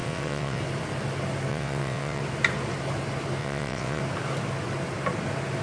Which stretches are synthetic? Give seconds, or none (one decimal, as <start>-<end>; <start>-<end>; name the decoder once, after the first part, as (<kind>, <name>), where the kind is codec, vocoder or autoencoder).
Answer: 0.0-0.6 (vocoder, WaveNeXt); 1.5-2.2; 3.4-4.0